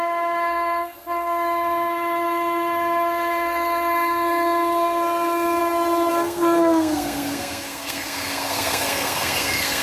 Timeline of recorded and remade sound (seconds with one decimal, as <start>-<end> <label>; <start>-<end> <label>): 0.0-5.6 remade; 5.6-6.1 recorded; 6.1-9.8 remade